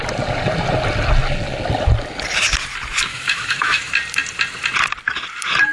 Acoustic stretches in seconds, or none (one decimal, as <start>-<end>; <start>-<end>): 0.0-3.1; 3.9-5.7